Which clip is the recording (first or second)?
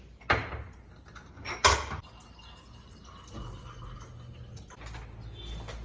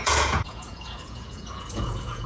first